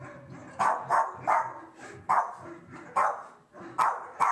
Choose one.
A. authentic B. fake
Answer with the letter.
A